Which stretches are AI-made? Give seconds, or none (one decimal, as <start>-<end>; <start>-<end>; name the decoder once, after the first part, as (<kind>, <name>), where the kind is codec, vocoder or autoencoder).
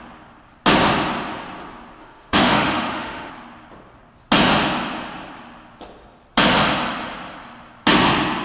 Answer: 2.0-3.3 (autoencoder, DAC-VAE)